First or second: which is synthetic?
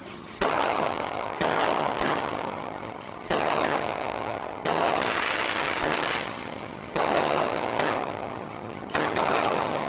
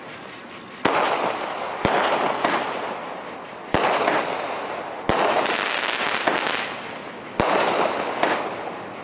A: first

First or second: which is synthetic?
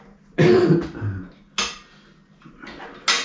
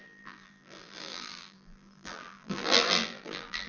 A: second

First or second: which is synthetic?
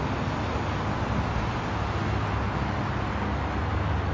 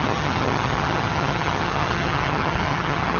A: second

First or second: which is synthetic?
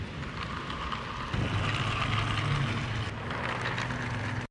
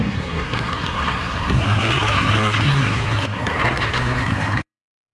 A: second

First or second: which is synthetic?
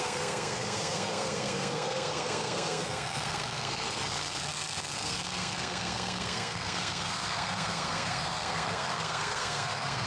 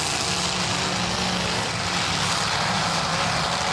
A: first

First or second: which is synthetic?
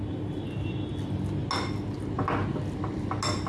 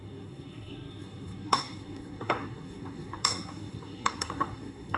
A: second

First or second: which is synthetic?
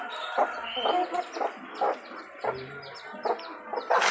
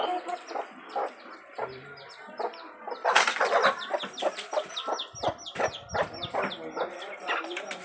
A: second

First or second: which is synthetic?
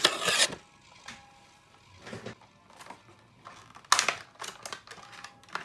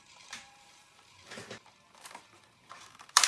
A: second